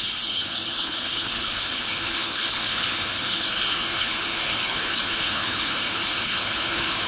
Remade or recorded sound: remade